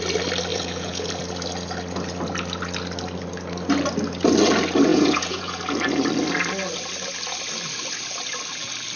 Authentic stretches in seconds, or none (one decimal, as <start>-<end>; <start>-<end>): 0.0-0.5; 1.1-4.9; 5.6-9.0